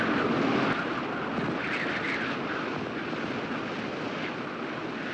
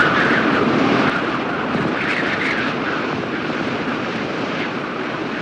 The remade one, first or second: second